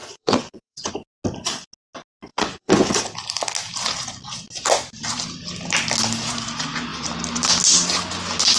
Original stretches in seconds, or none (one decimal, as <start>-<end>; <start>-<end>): 0.9-2.3; 2.9-8.6